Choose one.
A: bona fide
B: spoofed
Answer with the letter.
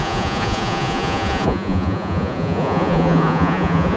B